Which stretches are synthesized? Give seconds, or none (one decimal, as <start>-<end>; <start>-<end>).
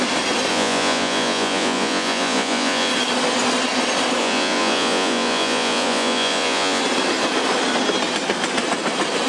0.5-2.9; 4.2-6.8